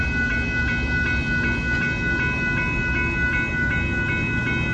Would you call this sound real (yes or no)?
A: yes